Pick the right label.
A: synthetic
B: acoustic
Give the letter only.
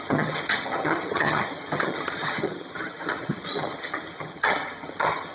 A